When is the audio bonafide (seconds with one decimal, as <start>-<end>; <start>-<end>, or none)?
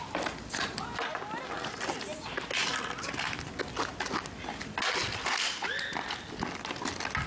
0.0-7.3